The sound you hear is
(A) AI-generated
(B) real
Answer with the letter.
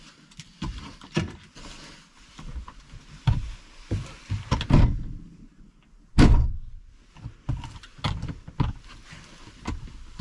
B